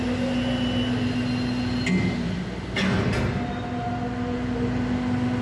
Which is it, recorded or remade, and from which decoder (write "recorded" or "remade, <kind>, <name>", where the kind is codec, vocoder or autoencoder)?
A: recorded